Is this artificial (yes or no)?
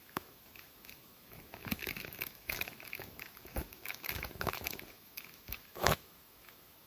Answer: yes